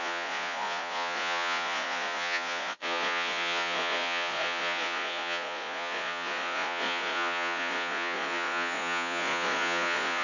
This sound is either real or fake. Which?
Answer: fake